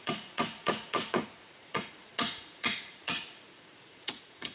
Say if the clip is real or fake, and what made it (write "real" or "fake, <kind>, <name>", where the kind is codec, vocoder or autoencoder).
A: fake, vocoder, Vocos